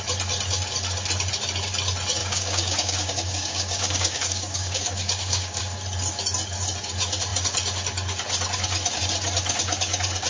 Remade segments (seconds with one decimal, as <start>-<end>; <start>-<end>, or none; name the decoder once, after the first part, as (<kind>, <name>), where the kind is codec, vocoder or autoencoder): 2.2-5.6 (codec, DAC)